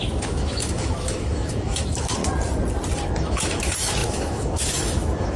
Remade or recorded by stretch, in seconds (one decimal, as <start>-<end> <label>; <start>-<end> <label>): 0.0-2.2 remade; 2.2-3.2 recorded; 3.2-5.4 remade